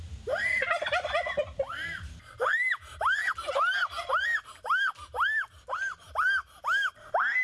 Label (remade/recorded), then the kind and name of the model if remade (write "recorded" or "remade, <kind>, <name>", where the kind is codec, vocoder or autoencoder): recorded